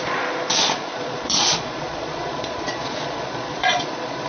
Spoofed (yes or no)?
yes